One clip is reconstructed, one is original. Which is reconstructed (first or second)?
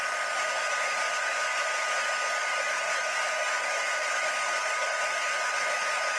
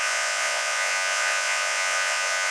second